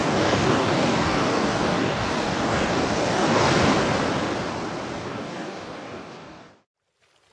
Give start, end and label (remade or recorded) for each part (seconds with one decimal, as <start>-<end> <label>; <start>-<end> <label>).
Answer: 0.0-3.5 remade; 3.5-5.0 recorded; 5.0-6.5 remade; 6.5-7.3 recorded